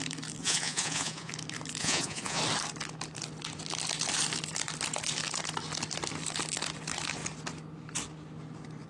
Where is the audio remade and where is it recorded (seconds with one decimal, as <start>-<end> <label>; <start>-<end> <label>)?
0.0-0.4 recorded; 0.4-1.3 remade; 1.3-1.8 recorded; 1.8-2.4 remade; 2.4-8.9 recorded